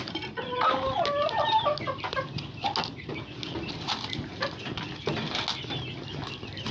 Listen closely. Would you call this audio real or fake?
real